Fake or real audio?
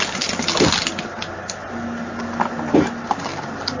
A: real